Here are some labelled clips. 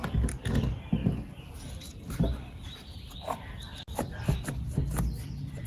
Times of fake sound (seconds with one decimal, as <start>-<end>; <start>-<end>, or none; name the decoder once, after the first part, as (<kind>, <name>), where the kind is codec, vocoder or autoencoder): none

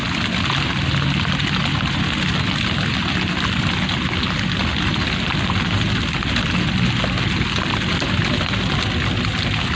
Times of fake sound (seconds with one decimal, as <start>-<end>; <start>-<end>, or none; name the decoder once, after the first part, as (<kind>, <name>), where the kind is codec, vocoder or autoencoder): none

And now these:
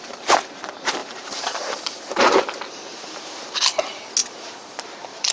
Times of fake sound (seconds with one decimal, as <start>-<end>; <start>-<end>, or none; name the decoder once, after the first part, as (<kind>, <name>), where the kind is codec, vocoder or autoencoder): 1.0-3.5 (vocoder, BigVGAN v2); 4.2-5.3

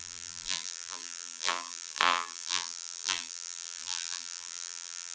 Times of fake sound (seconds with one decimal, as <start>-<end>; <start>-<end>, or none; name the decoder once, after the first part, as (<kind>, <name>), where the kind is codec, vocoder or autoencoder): 0.0-5.1 (vocoder, BigVGAN v2)

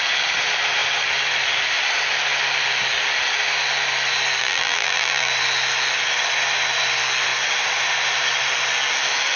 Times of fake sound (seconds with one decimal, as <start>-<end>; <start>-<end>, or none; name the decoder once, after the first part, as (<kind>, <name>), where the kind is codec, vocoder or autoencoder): 4.4-5.3 (vocoder, BigVGAN v2)